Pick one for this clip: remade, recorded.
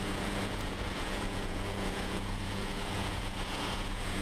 remade